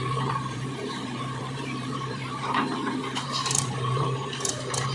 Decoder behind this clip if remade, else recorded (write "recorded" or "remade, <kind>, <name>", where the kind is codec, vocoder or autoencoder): remade, vocoder, BigVGAN v2